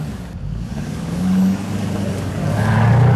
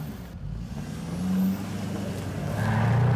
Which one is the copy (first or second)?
first